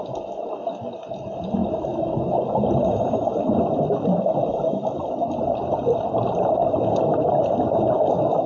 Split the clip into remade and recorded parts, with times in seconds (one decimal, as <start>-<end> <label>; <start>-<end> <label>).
0.0-8.5 recorded